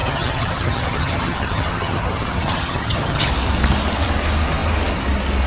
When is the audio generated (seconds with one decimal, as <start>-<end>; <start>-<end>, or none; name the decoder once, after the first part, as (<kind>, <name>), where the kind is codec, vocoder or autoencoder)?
0.0-3.3 (vocoder, HiFi-GAN)